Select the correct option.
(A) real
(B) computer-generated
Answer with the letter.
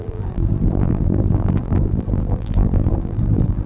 B